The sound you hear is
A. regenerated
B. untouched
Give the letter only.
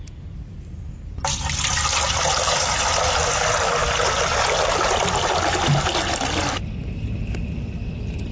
B